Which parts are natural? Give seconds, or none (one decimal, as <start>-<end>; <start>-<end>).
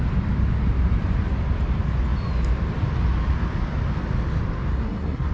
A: 0.0-4.7